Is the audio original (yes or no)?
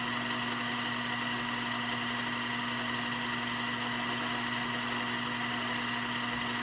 yes